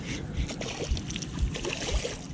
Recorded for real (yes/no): yes